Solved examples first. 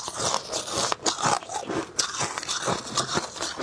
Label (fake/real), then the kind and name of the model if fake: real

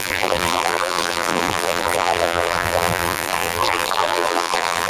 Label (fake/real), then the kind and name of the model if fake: fake, vocoder, BigVGAN v2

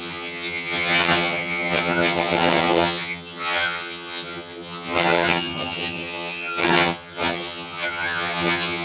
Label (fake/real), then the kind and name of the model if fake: fake, vocoder, HiFi-GAN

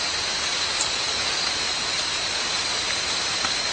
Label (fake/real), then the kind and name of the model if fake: fake, vocoder, BigVGAN v2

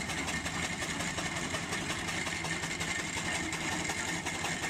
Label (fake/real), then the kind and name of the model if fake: real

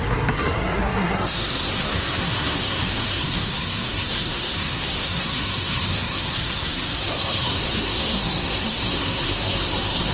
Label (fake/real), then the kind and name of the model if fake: fake, codec, SNAC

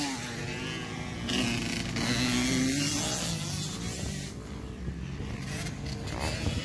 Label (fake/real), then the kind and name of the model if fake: real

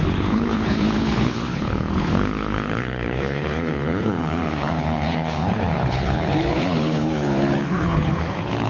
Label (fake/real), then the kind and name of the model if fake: fake, codec, HILCodec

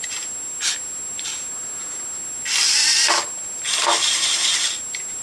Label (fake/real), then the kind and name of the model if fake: real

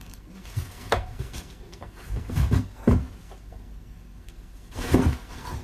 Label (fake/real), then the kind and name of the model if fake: fake, codec, SNAC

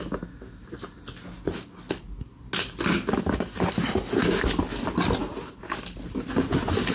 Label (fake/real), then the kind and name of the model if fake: real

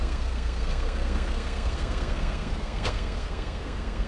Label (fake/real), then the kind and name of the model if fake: fake, codec, SNAC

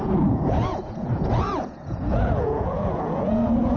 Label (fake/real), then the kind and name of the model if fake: fake, vocoder, Vocos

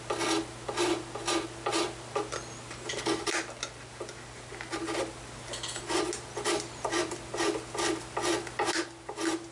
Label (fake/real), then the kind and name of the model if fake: real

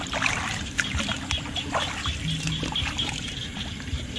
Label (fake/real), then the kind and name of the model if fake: real